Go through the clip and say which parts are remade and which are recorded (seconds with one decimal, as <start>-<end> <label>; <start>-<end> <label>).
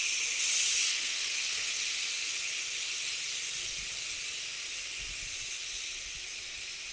0.0-0.9 recorded; 0.9-1.8 remade; 1.8-6.9 recorded